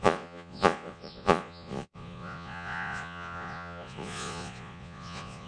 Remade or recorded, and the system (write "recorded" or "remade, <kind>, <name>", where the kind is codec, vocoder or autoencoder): remade, vocoder, Vocos